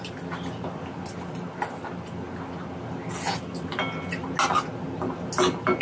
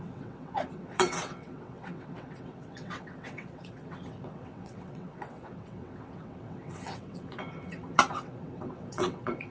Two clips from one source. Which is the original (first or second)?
first